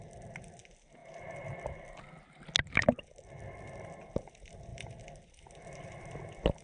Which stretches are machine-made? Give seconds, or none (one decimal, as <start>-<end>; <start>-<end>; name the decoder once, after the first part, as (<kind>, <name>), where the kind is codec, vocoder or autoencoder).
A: none